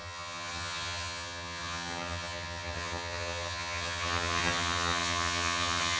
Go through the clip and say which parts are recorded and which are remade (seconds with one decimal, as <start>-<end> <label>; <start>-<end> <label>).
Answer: 0.0-6.0 remade